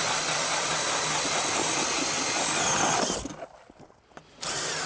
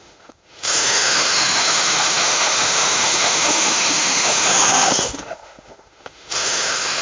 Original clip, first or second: first